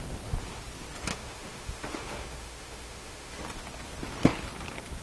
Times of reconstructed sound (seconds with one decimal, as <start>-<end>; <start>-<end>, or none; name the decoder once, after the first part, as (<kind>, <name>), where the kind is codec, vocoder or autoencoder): 1.1-3.4 (autoencoder, DAC-VAE)